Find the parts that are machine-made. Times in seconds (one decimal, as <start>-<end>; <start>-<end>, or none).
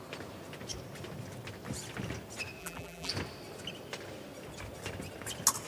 2.6-3.1